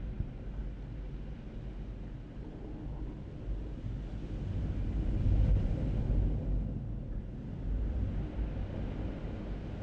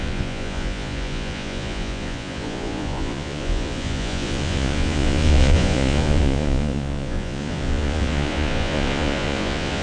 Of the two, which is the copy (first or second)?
second